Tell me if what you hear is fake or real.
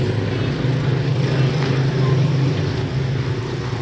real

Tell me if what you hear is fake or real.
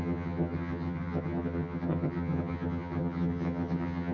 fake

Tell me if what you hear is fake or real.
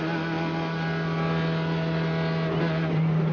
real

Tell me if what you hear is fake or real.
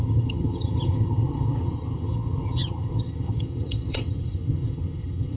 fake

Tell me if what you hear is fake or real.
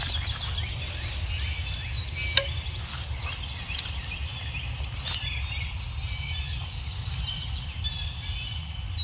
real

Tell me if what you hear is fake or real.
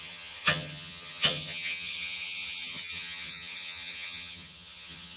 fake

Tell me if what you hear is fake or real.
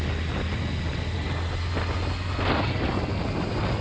real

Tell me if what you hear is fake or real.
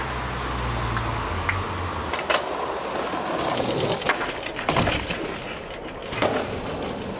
real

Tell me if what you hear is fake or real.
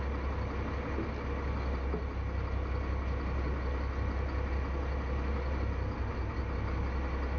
real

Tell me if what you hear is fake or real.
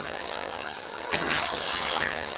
fake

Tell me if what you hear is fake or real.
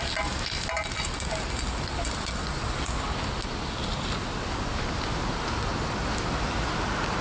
real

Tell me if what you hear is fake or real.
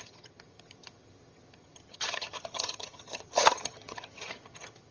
fake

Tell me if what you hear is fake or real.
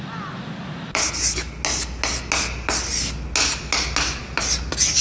real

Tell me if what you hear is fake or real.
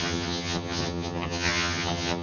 fake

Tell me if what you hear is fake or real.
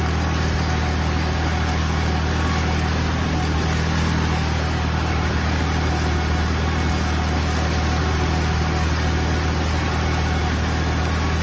real